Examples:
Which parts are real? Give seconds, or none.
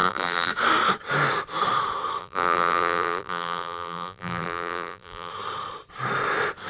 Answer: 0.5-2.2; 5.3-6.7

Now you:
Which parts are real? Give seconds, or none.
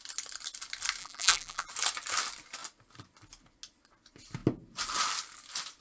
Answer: 0.0-1.0; 1.7-5.8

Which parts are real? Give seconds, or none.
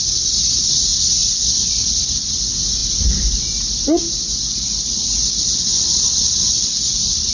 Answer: 0.0-7.3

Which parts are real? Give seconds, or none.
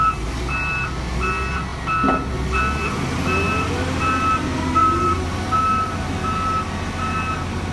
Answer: 0.0-4.8; 5.6-7.7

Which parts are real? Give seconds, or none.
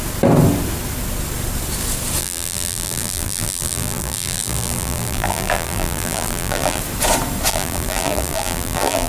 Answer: 0.0-2.2; 6.8-7.5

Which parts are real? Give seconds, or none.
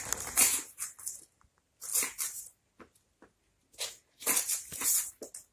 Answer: 0.0-5.5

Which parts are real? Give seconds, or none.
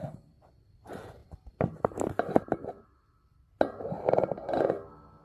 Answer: 0.0-1.2; 2.7-5.2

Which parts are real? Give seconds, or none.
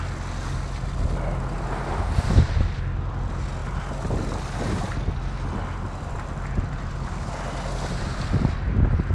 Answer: 0.0-9.1